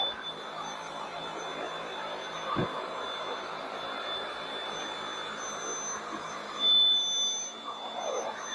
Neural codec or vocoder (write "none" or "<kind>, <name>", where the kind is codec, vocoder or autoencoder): none